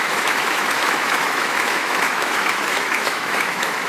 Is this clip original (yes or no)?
no